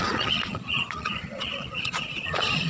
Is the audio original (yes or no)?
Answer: no